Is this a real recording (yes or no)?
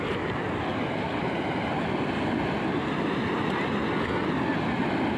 yes